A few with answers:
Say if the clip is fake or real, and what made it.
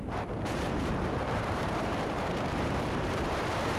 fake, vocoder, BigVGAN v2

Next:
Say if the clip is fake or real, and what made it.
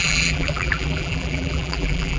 fake, vocoder, BigVGAN v2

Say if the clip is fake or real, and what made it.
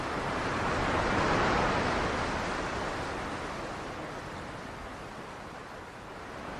real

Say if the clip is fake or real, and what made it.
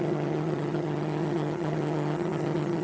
fake, vocoder, HiFi-GAN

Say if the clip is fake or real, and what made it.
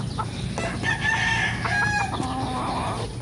real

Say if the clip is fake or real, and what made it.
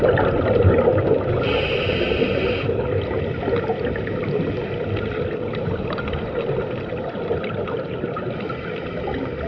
real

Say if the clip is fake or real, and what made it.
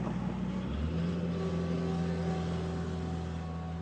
real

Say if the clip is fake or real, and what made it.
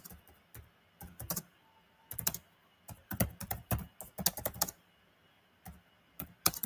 real